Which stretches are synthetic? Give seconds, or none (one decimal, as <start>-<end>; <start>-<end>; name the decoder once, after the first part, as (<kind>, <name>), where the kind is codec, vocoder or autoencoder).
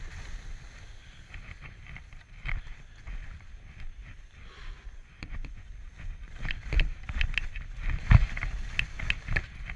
5.0-5.7 (vocoder, Vocos)